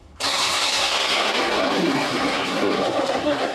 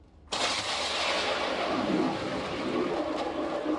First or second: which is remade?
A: first